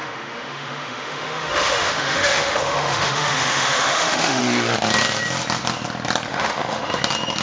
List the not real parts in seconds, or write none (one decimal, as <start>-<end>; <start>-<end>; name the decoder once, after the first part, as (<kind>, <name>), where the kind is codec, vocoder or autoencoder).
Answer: 0.0-4.4 (autoencoder, DAC-VAE); 6.3-7.0